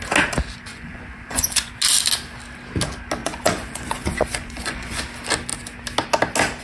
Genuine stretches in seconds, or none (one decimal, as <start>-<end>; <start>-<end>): 0.0-0.7; 1.7-3.2; 5.0-6.6